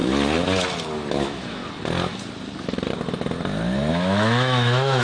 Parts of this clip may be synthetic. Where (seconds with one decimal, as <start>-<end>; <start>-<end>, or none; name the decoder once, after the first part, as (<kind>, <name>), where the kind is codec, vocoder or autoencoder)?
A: 1.2-1.6 (autoencoder, DAC-VAE); 3.9-5.0